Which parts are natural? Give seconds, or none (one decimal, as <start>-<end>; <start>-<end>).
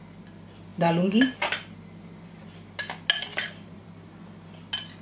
0.0-0.7; 2.4-3.3; 4.3-5.0